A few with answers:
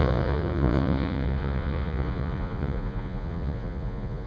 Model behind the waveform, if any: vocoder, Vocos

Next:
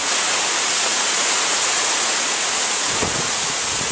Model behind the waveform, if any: vocoder, Vocos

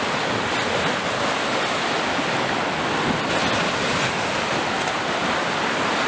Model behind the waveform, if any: none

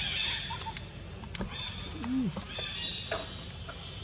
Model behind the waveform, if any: none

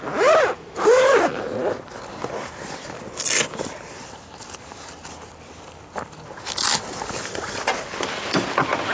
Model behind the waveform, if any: none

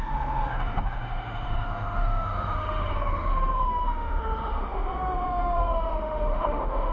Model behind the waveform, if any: autoencoder, DAC-VAE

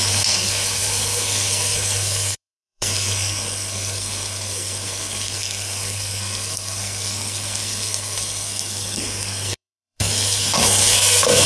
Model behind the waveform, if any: codec, SNAC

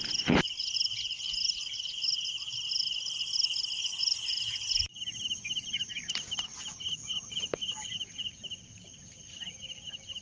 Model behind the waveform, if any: none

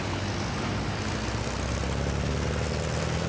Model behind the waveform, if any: none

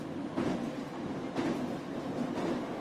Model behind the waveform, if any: none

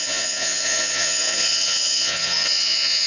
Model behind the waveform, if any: vocoder, Vocos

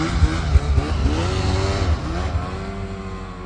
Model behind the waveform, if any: none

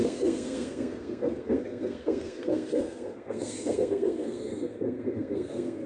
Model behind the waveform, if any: codec, SNAC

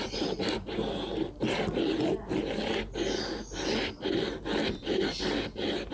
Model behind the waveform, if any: none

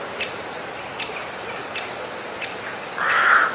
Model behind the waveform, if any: none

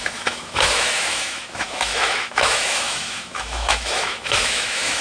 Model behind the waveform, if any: autoencoder, DAC-VAE